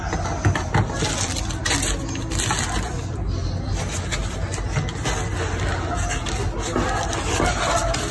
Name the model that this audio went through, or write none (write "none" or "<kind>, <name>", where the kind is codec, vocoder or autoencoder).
none